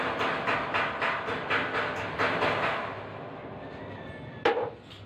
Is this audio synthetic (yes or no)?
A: no